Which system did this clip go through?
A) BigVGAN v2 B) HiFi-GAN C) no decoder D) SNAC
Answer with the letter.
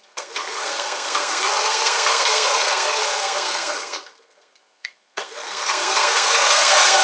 D